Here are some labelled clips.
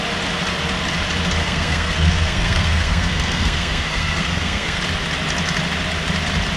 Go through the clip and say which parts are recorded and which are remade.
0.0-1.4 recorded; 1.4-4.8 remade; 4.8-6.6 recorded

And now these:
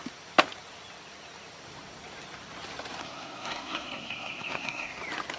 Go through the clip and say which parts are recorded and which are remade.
0.0-3.0 recorded; 3.0-5.0 remade; 5.0-5.4 recorded

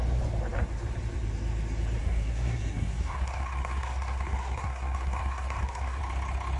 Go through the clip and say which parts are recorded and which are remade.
0.0-2.0 recorded; 2.0-6.0 remade; 6.0-6.6 recorded

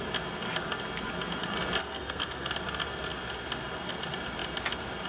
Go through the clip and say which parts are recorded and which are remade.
0.0-1.8 recorded; 1.8-2.5 remade; 2.5-5.1 recorded